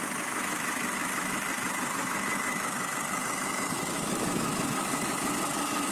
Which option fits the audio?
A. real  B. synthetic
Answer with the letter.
B